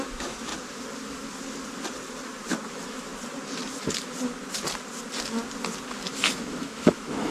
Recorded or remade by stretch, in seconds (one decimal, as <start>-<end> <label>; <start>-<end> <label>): 0.0-0.5 remade; 0.5-2.7 recorded; 2.7-3.1 remade; 3.1-6.1 recorded; 6.1-7.3 remade